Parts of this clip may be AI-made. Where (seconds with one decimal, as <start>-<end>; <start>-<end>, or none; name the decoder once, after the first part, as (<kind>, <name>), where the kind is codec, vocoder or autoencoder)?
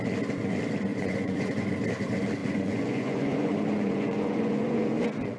0.9-1.6 (vocoder, Vocos); 2.4-4.8